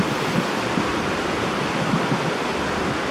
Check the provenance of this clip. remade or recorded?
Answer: recorded